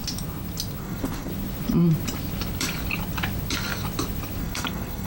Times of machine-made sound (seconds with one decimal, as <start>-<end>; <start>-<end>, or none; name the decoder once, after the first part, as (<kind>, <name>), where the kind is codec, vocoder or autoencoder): 0.8-1.3 (codec, SNAC); 4.4-5.1